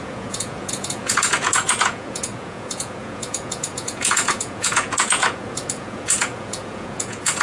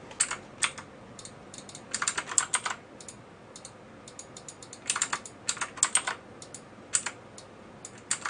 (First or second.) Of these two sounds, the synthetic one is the first